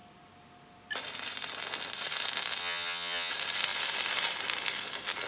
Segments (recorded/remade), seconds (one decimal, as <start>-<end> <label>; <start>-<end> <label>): 0.0-2.6 recorded; 2.6-3.3 remade; 3.3-5.3 recorded